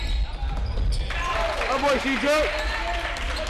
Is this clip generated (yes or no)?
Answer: no